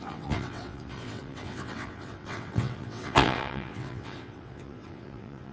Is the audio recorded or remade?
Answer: remade